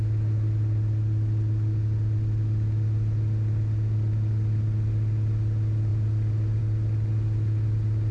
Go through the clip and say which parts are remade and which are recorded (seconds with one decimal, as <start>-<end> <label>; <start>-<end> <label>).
0.0-8.1 recorded

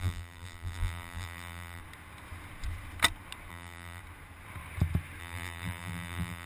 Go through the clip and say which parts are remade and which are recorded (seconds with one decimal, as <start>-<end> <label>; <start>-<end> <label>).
0.0-1.8 remade; 1.8-3.5 recorded; 3.5-4.0 remade; 4.0-5.2 recorded; 5.2-6.5 remade

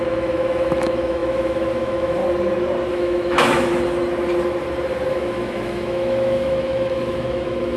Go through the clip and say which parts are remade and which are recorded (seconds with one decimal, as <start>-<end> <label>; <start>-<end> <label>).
0.0-2.2 remade; 2.2-2.9 recorded; 2.9-3.7 remade; 3.7-5.1 recorded; 5.1-7.8 remade

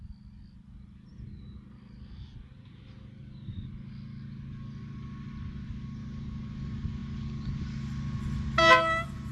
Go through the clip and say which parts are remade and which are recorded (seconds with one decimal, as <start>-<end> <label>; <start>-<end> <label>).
0.0-9.3 recorded

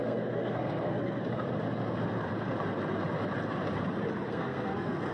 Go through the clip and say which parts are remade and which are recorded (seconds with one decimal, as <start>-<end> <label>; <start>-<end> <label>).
0.0-1.2 remade; 1.2-4.3 recorded; 4.3-5.1 remade

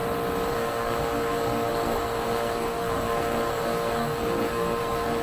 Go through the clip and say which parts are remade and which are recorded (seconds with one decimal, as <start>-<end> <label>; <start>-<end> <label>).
0.0-0.5 recorded; 0.5-5.2 remade

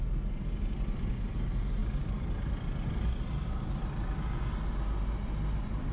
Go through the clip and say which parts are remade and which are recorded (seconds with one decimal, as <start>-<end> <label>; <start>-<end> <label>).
0.0-0.6 recorded; 0.6-1.1 remade; 1.1-1.8 recorded; 1.8-4.4 remade; 4.4-5.9 recorded

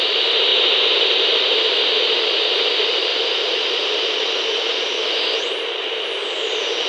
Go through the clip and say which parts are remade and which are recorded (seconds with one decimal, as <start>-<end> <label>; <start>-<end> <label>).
0.0-0.5 recorded; 0.5-1.7 remade; 1.7-3.1 recorded; 3.1-6.1 remade; 6.1-6.9 recorded